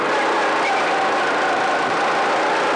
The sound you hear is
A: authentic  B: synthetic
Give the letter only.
A